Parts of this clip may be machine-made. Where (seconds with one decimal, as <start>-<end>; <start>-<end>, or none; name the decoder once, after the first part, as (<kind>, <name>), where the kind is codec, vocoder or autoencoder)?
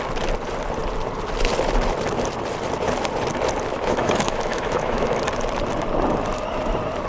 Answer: 3.7-5.2 (autoencoder, DAC-VAE)